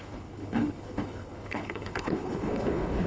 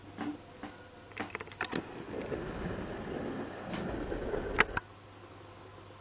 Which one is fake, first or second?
first